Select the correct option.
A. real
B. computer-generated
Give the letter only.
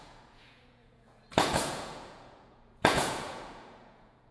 B